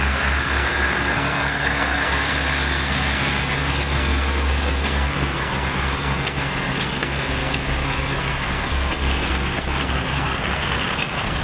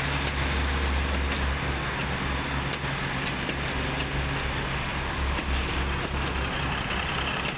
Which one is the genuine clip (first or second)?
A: second